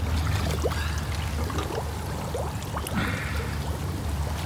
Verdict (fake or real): real